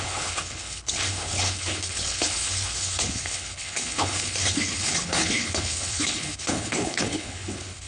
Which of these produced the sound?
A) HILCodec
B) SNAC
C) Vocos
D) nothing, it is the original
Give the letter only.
A